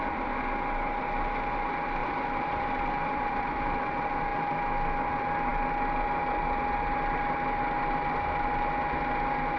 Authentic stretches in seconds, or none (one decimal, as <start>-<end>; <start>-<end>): 0.0-2.0; 3.8-9.6